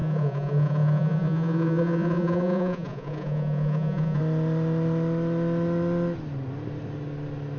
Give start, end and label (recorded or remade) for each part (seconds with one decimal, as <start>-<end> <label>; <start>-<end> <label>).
0.0-4.2 remade; 4.2-7.6 recorded